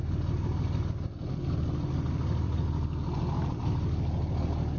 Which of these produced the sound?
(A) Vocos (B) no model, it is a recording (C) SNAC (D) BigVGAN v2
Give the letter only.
B